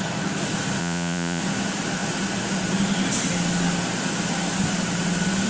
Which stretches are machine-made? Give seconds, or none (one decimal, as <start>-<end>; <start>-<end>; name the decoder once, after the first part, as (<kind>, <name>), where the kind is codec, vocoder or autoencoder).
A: 0.8-1.4 (vocoder, Vocos)